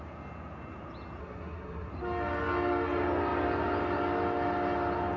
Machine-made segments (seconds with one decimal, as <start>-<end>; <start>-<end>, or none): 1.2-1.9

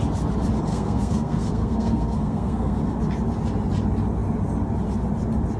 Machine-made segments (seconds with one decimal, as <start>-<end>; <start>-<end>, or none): 0.7-2.8

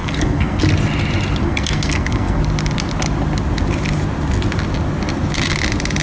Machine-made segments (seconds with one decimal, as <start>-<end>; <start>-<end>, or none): 0.0-0.6; 1.4-2.4